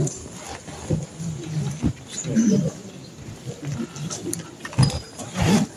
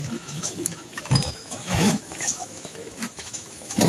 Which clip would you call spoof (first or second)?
second